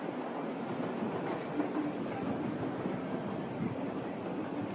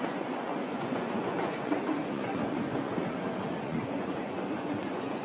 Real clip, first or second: first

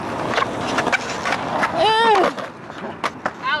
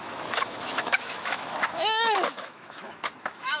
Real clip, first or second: first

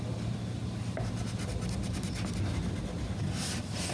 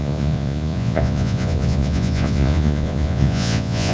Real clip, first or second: first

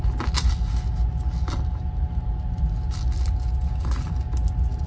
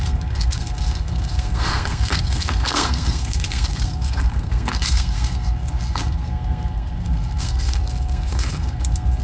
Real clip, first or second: first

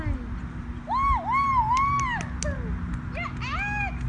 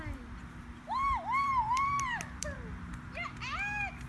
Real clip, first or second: first